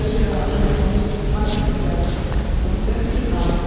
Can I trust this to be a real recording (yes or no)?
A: yes